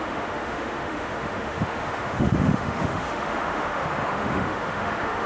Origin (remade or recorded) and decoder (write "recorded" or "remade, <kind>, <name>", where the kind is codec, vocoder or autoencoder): remade, autoencoder, DAC-VAE